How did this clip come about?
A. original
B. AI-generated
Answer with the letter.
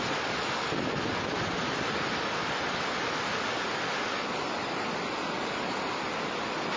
B